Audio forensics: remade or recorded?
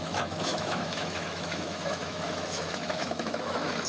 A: remade